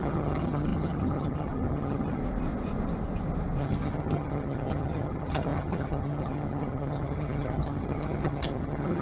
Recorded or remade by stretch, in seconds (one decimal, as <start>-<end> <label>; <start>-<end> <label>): 0.0-2.2 remade; 2.2-3.6 recorded; 3.6-9.0 remade